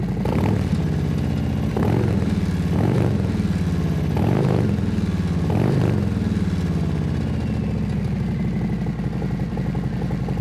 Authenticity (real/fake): real